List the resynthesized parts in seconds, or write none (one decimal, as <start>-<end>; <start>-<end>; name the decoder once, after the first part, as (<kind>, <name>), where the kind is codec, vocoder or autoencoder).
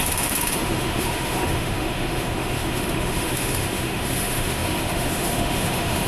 0.0-6.1 (autoencoder, DAC-VAE)